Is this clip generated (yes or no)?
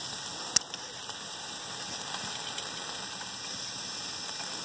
no